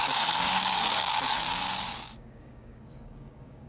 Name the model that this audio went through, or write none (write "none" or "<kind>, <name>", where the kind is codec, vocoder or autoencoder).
codec, DAC